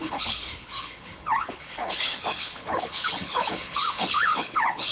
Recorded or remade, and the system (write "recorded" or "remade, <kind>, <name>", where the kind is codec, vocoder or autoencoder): remade, codec, HILCodec